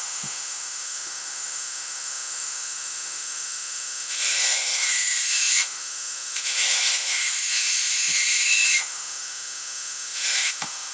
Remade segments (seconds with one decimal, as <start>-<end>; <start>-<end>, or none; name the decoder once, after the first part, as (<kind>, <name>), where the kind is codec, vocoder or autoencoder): 0.0-10.9 (autoencoder, DAC-VAE)